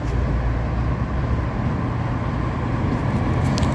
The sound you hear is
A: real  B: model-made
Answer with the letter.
A